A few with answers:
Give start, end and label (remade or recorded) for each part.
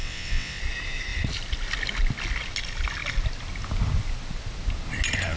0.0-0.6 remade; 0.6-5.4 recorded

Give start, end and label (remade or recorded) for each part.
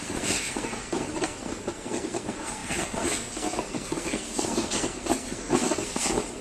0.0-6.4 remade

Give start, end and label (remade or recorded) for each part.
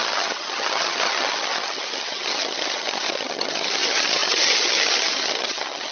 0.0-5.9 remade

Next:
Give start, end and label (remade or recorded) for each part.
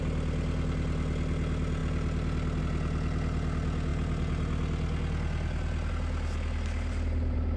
0.0-7.6 recorded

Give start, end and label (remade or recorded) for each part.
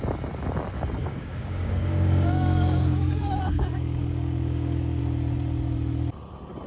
0.0-1.0 recorded; 1.0-5.0 remade; 5.0-6.7 recorded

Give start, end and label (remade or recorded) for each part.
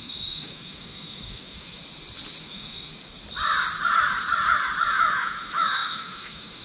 0.0-1.8 remade; 1.8-2.4 recorded; 2.4-2.9 remade; 2.9-4.9 recorded; 4.9-6.6 remade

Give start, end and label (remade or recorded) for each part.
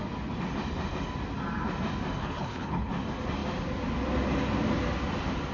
0.0-2.2 recorded; 2.2-2.9 remade; 2.9-5.5 recorded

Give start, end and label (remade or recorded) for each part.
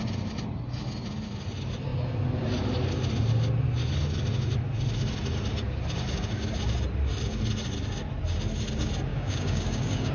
0.0-9.1 recorded; 9.1-10.1 remade